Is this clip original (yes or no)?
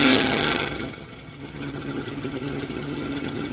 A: no